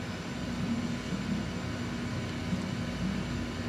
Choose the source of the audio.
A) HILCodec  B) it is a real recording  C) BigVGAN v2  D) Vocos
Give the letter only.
B